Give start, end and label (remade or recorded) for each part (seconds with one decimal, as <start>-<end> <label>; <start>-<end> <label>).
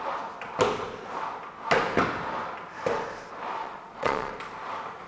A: 0.0-3.6 recorded; 3.6-4.3 remade; 4.3-5.1 recorded